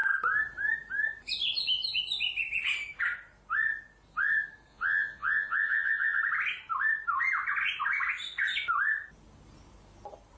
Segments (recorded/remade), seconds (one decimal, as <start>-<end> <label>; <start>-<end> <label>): 0.0-4.7 recorded; 4.7-6.2 remade; 6.2-10.4 recorded